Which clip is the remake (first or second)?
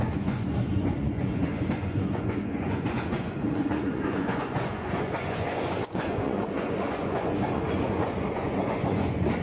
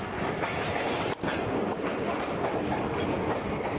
first